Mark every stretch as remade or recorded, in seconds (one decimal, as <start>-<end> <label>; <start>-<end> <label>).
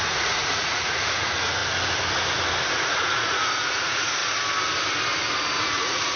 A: 0.0-1.6 remade; 1.6-2.8 recorded; 2.8-4.2 remade; 4.2-5.6 recorded; 5.6-6.2 remade